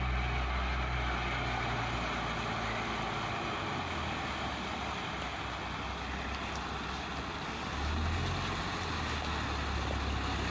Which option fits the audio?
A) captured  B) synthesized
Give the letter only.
A